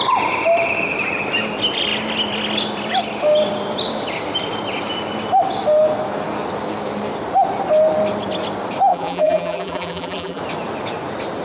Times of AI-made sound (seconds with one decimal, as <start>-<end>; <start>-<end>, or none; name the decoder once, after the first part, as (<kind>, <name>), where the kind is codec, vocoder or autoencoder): 8.9-10.4 (vocoder, BigVGAN v2)